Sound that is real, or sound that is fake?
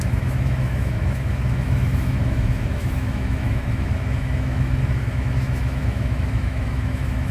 fake